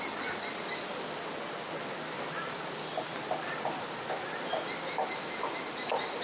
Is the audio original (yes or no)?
yes